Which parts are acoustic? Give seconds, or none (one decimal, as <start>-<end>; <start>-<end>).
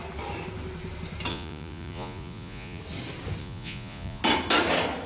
0.0-1.3; 2.8-3.4; 4.2-5.1